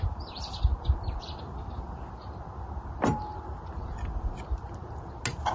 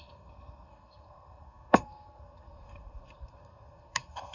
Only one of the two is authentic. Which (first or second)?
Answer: first